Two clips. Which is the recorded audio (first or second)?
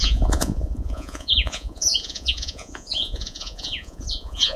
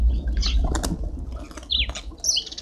second